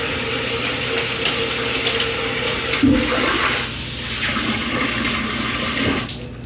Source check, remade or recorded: recorded